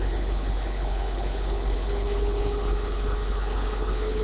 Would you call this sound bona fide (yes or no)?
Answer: no